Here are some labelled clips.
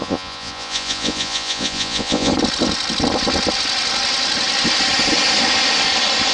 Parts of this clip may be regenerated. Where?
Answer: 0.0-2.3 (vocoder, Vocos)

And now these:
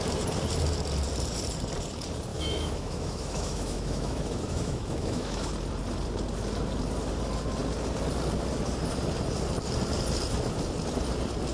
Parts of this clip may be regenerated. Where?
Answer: 2.3-5.5 (autoencoder, DAC-VAE)

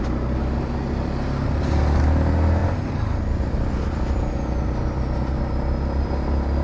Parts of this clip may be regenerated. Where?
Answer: none

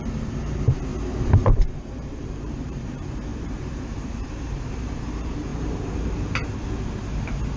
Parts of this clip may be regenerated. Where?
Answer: 0.0-0.9 (vocoder, BigVGAN v2); 1.5-5.5; 7.1-7.6

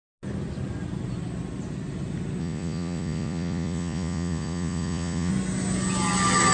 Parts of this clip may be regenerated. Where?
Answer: 2.4-5.3 (vocoder, Vocos)

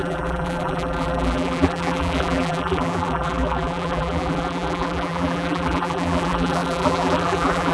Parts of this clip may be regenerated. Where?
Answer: 0.0-7.7 (vocoder, BigVGAN v2)

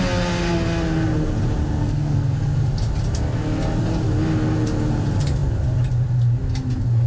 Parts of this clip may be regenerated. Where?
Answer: 1.8-2.4 (codec, SNAC)

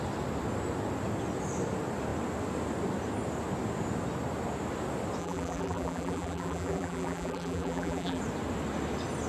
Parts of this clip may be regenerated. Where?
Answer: 5.2-8.2 (vocoder, BigVGAN v2)